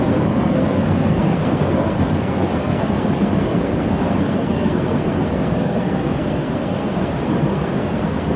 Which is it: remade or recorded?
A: remade